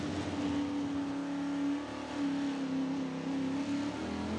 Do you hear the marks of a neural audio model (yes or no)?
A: no